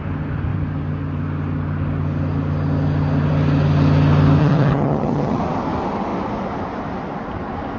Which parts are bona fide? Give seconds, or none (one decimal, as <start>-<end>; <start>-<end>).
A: 0.0-4.4; 5.4-7.8